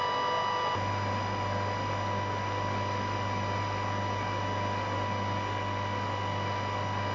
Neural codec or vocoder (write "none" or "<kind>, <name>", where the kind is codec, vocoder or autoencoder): none